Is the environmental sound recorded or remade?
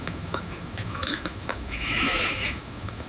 remade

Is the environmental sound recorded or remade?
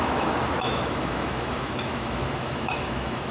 remade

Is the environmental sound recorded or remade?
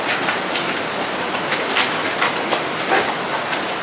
recorded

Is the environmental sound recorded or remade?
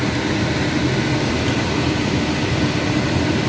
recorded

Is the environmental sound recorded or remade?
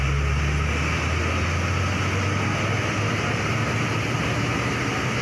recorded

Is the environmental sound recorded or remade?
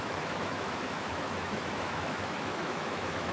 remade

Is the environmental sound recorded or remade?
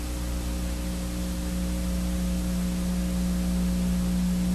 recorded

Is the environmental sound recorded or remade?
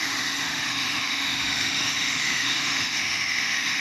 remade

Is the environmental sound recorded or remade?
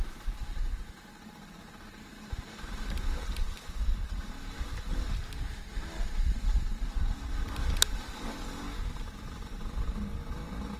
recorded